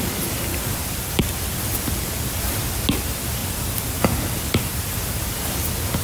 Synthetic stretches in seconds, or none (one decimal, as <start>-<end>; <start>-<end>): 0.5-1.8; 3.4-5.3